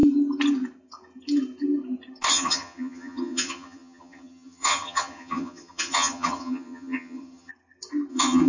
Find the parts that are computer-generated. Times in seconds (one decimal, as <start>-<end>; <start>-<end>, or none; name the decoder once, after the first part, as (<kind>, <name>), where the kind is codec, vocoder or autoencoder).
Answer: 2.3-7.5 (vocoder, HiFi-GAN); 8.1-8.5